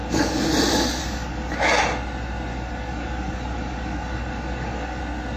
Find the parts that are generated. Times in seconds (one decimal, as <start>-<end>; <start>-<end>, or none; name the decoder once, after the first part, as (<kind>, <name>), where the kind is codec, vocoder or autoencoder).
0.0-0.5 (codec, DAC); 1.0-1.8; 2.5-5.0